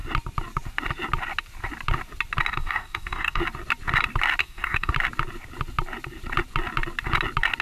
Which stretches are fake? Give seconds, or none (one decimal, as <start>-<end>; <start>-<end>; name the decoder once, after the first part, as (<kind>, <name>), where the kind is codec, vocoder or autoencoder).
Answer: 2.5-3.4 (codec, DAC); 4.4-4.9